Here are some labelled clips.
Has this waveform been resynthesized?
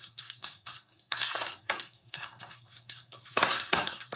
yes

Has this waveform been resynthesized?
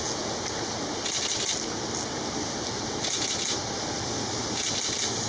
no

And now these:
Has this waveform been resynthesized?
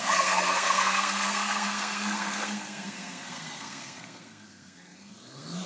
yes